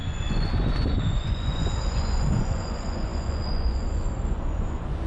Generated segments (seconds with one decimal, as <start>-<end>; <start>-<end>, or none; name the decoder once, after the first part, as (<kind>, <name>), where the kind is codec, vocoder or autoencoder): 0.0-5.1 (vocoder, Vocos)